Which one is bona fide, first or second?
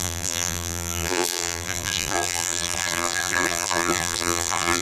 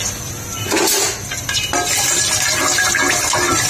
second